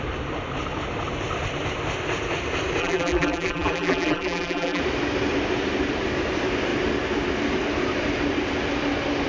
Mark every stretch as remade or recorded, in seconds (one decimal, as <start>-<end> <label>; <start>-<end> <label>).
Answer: 0.0-2.8 recorded; 2.8-4.8 remade; 4.8-9.3 recorded